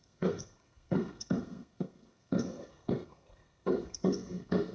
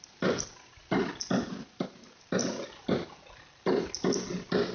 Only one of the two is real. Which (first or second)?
second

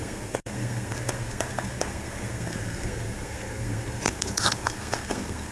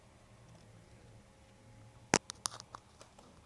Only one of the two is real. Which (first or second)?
second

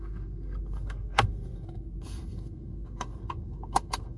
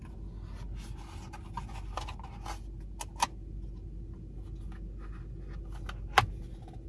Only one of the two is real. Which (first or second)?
second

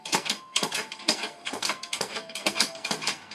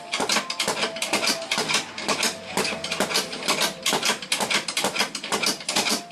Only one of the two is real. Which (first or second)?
second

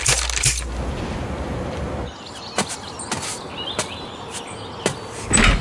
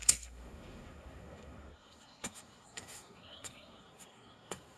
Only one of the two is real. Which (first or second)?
first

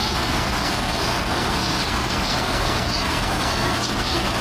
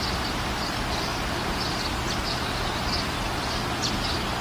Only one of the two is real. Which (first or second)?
second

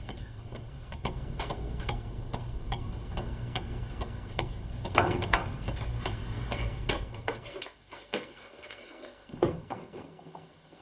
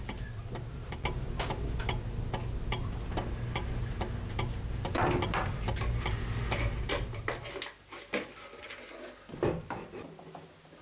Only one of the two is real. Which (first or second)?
second